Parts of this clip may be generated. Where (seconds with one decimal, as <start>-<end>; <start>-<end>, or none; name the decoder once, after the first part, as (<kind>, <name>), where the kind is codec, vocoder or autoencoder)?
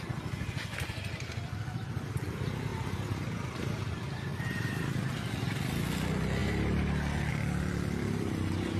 2.7-3.8 (vocoder, BigVGAN v2); 6.4-7.3